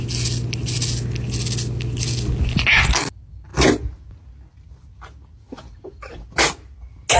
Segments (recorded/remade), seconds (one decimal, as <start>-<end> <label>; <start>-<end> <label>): 0.0-7.2 recorded